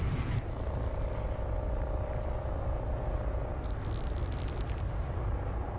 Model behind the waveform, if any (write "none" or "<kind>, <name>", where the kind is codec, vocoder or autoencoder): none